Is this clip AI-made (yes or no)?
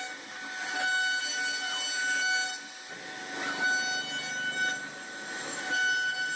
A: no